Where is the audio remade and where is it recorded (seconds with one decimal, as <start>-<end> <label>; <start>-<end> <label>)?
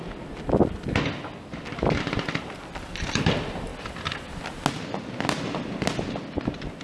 0.0-6.8 recorded